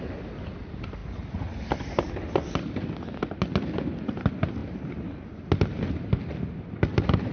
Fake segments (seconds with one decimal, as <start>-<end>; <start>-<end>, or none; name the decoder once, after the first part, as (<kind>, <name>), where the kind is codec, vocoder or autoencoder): none